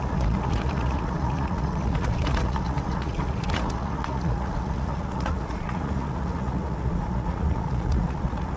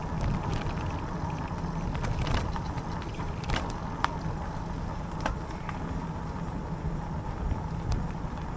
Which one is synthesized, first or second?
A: first